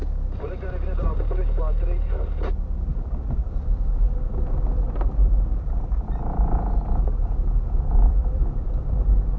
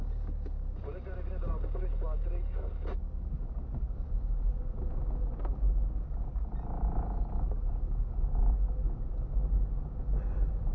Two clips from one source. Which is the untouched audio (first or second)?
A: second